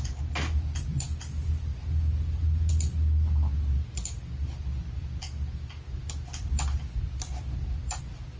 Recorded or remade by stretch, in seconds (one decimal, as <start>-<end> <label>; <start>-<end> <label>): 0.0-8.4 recorded